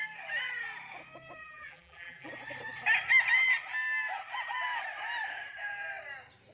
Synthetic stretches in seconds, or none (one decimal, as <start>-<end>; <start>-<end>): 1.4-2.3